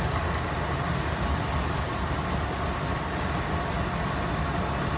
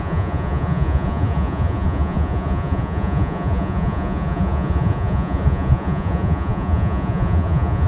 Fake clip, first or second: second